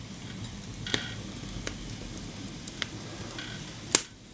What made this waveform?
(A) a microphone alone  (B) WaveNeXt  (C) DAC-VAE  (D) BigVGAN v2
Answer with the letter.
A